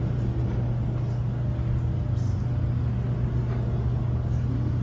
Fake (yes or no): no